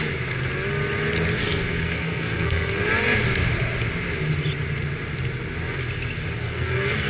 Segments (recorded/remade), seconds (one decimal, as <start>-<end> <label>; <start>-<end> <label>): 0.0-1.4 recorded; 1.4-2.8 remade; 2.8-6.4 recorded; 6.4-7.1 remade